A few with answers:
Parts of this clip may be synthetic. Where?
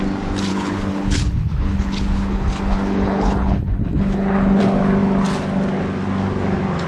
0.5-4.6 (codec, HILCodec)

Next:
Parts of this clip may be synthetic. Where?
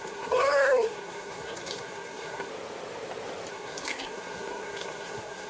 0.0-2.5 (codec, SNAC); 3.5-5.5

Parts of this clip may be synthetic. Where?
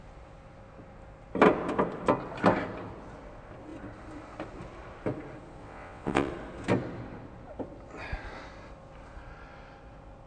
5.6-6.3 (vocoder, WaveNeXt)